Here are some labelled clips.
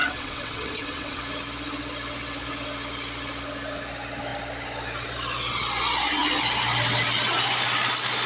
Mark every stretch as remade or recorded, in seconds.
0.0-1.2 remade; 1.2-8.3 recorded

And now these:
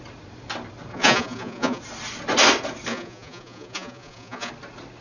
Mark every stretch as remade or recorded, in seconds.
0.0-0.9 recorded; 0.9-1.8 remade; 1.8-2.9 recorded; 2.9-4.5 remade; 4.5-5.0 recorded

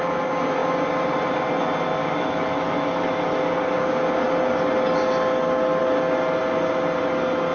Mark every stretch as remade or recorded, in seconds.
0.0-2.0 recorded; 2.0-3.4 remade; 3.4-7.5 recorded

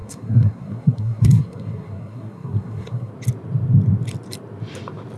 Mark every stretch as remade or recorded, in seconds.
0.0-3.1 remade; 3.1-5.2 recorded

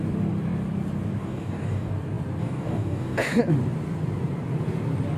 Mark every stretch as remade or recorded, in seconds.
0.0-1.2 recorded; 1.2-1.9 remade; 1.9-2.4 recorded; 2.4-3.4 remade; 3.4-5.2 recorded

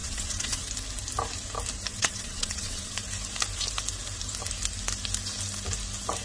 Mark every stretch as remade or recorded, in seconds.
0.0-0.7 remade; 0.7-1.9 recorded; 1.9-3.0 remade; 3.0-6.2 recorded

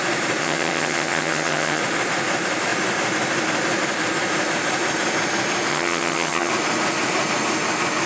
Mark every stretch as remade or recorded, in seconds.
0.0-0.4 recorded; 0.4-1.8 remade; 1.8-5.7 recorded; 5.7-6.5 remade; 6.5-8.1 recorded

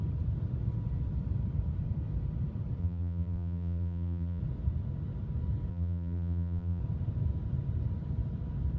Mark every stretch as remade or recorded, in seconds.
0.0-2.8 recorded; 2.8-4.4 remade; 4.4-5.7 recorded; 5.7-6.8 remade; 6.8-8.8 recorded